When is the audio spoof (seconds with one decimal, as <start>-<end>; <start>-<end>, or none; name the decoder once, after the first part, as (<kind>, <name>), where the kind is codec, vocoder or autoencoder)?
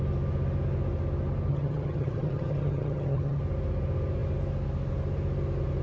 1.5-3.4 (vocoder, HiFi-GAN)